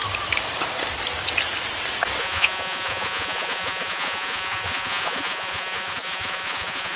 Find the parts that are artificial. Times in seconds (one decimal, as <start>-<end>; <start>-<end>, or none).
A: 2.2-7.0